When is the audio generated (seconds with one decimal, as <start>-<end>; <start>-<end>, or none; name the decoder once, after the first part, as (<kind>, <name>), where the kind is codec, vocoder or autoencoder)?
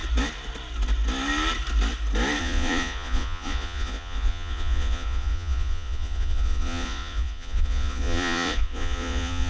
2.4-9.5 (vocoder, Vocos)